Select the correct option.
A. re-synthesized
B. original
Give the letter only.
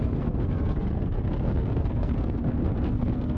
A